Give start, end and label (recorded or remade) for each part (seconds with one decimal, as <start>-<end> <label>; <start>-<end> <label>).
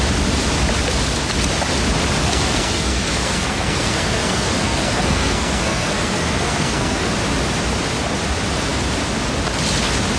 0.0-2.2 recorded; 2.2-7.1 remade; 7.1-10.2 recorded